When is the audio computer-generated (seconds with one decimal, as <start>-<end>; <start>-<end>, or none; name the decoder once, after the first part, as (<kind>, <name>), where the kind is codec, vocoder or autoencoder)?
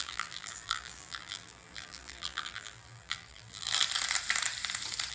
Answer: 0.0-3.8 (vocoder, BigVGAN v2)